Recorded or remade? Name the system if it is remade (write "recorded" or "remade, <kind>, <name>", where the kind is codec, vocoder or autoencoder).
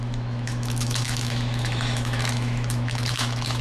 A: remade, autoencoder, DAC-VAE